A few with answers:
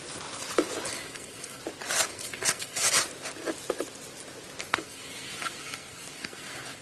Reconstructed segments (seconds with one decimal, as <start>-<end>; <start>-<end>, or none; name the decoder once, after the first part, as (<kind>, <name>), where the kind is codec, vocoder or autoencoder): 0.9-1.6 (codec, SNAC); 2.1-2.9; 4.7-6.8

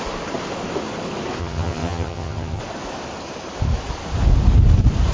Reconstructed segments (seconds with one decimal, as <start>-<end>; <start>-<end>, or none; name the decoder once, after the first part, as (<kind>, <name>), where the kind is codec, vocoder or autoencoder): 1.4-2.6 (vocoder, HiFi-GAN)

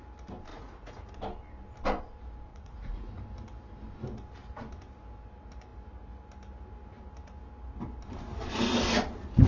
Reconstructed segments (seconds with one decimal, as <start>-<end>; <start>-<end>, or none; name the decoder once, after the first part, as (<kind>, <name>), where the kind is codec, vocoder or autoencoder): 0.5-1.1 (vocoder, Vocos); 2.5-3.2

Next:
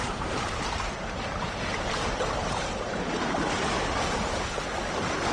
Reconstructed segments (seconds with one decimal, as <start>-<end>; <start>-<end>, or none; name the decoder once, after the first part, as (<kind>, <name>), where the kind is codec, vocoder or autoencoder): 0.0-3.1 (vocoder, BigVGAN v2)

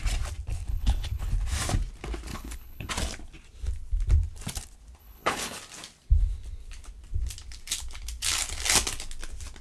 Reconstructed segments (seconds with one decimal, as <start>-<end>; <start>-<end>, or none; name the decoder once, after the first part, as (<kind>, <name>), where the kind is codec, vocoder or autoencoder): 0.7-1.3 (codec, HILCodec); 2.3-2.9; 5.0-5.6

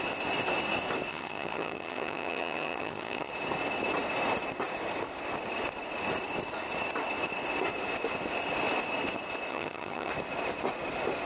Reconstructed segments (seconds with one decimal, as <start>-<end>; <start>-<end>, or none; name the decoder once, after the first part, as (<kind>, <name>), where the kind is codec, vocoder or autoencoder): 1.1-3.3 (vocoder, HiFi-GAN); 9.5-10.1

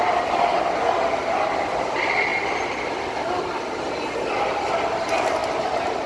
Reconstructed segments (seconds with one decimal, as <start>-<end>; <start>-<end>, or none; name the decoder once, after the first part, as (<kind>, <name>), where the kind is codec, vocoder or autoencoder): 0.5-1.5 (vocoder, BigVGAN v2)